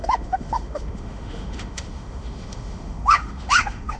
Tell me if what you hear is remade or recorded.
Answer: remade